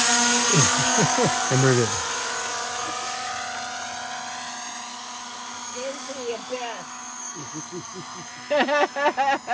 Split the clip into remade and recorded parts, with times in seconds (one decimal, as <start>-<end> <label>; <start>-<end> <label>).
0.0-0.5 recorded; 0.5-3.3 remade; 3.3-4.9 recorded; 4.9-7.6 remade; 7.6-9.5 recorded